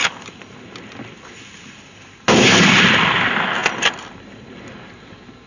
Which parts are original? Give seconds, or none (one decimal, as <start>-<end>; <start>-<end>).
0.0-5.5